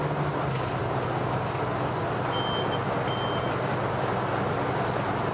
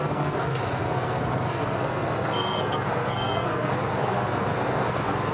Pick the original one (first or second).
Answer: first